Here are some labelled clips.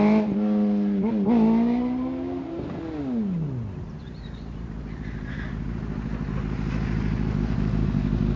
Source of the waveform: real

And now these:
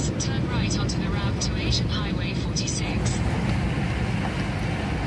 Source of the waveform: real